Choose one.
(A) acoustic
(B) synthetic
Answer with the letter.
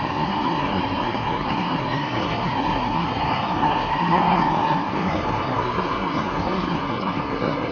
B